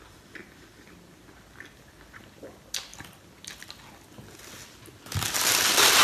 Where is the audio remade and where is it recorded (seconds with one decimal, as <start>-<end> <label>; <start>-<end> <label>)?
0.0-6.0 recorded